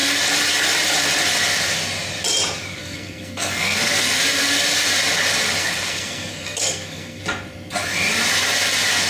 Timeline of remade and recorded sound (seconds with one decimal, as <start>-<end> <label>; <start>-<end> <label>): 0.0-2.8 recorded; 2.8-4.1 remade; 4.1-5.6 recorded; 5.6-7.2 remade; 7.2-9.1 recorded